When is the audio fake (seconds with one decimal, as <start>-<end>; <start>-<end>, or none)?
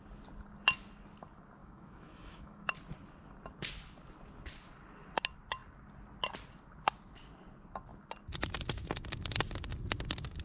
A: 1.6-2.7